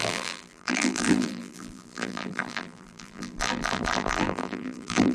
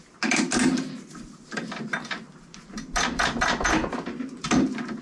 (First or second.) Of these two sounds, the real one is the second